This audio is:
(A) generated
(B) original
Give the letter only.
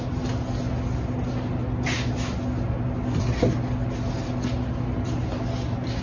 B